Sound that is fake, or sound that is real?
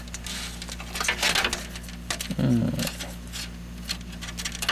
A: real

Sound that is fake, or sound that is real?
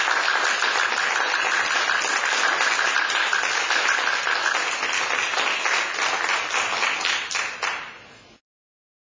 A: real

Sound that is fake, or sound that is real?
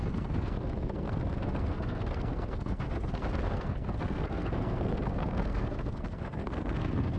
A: fake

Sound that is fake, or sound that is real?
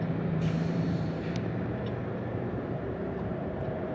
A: fake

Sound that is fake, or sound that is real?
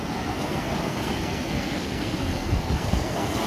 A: fake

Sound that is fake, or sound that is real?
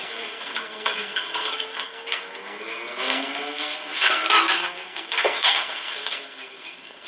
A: fake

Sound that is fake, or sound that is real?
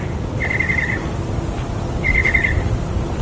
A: real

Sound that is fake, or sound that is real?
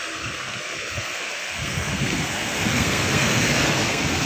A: fake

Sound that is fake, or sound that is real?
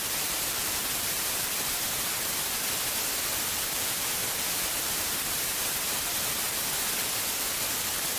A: fake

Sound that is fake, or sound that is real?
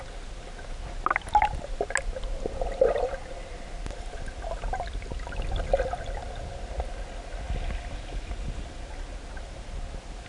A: real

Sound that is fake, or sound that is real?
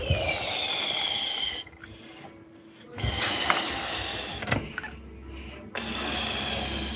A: real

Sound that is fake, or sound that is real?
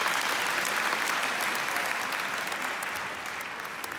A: real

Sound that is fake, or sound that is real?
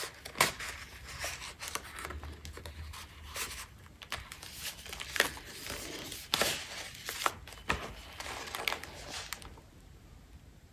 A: real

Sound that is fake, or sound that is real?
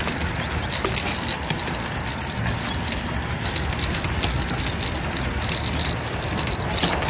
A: real